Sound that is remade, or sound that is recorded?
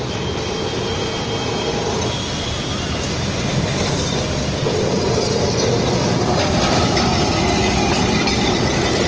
recorded